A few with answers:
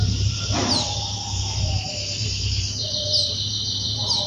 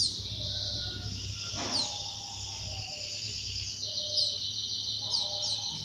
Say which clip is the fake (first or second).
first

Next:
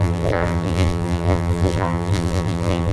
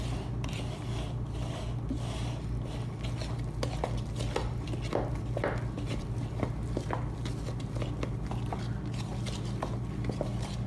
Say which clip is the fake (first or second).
first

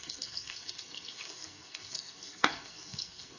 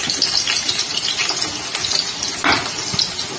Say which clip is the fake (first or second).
first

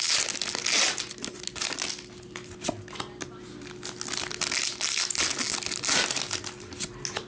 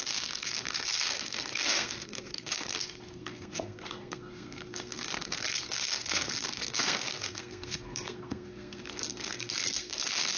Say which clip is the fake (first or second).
second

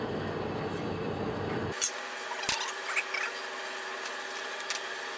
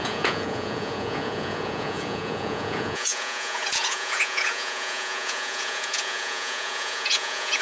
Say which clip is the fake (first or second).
second